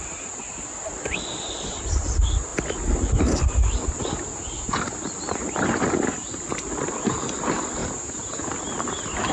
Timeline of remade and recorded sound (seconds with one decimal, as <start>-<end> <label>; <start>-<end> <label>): 0.0-7.8 recorded; 7.8-8.5 remade; 8.5-9.3 recorded